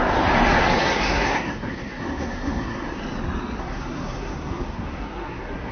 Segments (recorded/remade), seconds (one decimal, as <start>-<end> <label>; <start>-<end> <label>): 0.0-0.8 recorded; 0.8-3.0 remade; 3.0-3.6 recorded; 3.6-5.7 remade